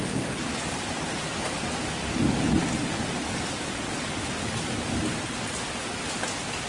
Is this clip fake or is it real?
real